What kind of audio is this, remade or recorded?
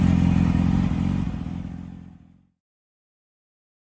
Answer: recorded